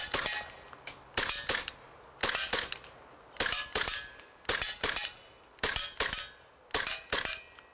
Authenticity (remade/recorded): recorded